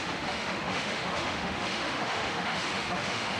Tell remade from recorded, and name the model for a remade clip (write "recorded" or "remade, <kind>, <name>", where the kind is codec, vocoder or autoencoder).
remade, autoencoder, DAC-VAE